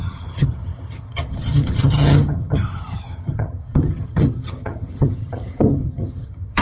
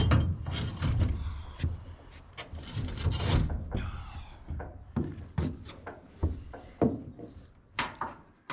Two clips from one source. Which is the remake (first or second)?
first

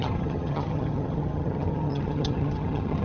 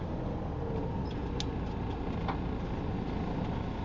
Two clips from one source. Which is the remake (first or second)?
first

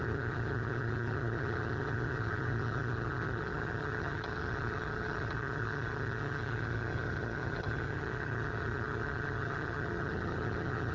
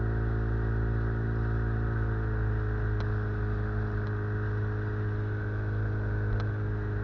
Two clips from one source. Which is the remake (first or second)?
first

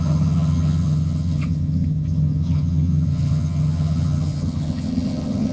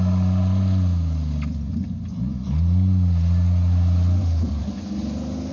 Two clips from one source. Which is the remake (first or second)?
first